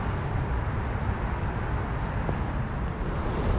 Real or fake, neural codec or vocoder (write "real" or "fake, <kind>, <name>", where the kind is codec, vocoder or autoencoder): fake, vocoder, BigVGAN v2